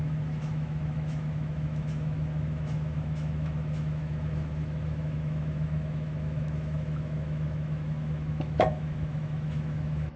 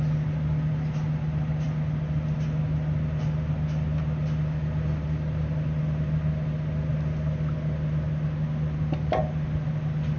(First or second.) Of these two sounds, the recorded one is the second